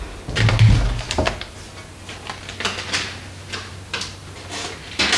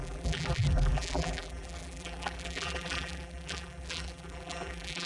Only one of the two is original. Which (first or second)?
first